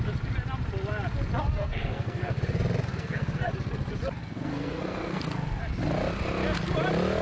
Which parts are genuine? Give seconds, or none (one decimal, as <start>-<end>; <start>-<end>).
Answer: 0.0-1.6; 2.4-2.9; 3.5-4.2; 5.6-7.2